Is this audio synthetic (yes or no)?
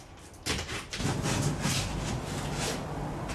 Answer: no